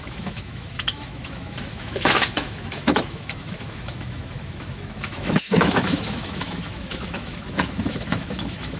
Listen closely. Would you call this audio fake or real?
fake